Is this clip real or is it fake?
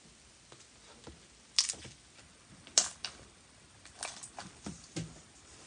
real